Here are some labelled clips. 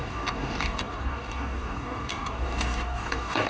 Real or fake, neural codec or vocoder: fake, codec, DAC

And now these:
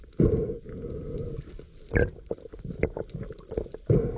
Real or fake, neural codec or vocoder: real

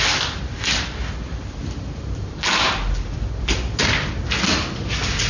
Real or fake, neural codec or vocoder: real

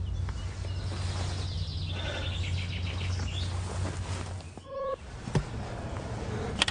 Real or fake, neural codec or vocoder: real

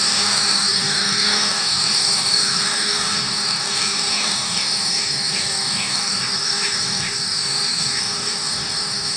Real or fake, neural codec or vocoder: fake, codec, DAC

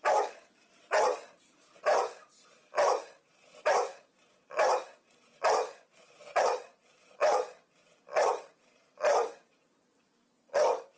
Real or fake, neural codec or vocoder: real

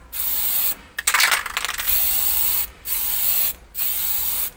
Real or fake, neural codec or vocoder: real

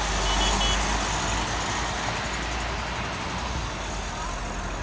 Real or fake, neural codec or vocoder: real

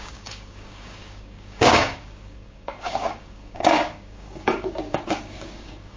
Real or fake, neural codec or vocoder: fake, codec, DAC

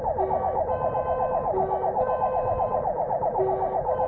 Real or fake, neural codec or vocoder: fake, codec, DAC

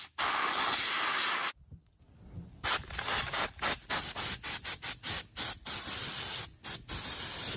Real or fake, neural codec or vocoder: real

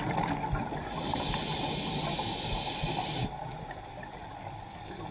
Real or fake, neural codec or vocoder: real